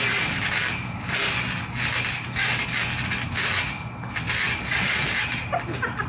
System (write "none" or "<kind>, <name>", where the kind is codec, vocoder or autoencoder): none